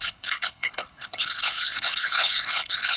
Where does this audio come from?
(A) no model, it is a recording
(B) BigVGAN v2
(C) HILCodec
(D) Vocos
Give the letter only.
C